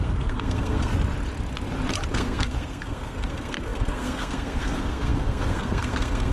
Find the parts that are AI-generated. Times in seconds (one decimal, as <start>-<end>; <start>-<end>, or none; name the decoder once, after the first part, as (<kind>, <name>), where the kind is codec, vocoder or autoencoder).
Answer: 0.0-0.9 (codec, SNAC); 2.1-6.3